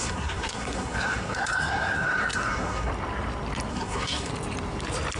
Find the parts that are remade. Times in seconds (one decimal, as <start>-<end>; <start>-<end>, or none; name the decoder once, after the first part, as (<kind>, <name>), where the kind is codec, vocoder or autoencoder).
0.0-2.9 (codec, SNAC); 3.7-4.3